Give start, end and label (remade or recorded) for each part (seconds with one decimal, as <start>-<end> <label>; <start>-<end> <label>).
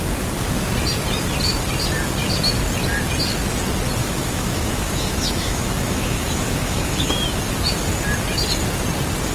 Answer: 0.0-4.0 recorded; 4.0-7.4 remade; 7.4-9.3 recorded